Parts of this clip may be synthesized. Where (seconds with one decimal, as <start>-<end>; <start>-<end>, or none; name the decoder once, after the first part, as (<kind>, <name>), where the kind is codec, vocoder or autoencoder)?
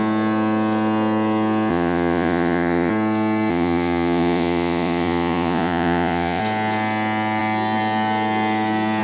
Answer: 1.7-2.9 (vocoder, Vocos); 3.5-6.4